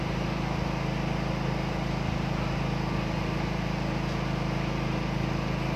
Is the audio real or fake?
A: real